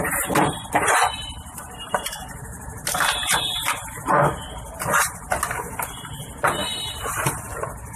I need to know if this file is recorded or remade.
recorded